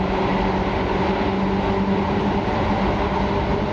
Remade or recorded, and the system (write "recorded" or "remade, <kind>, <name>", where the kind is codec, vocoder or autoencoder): recorded